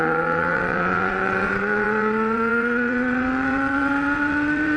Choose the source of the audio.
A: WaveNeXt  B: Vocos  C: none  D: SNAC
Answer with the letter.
A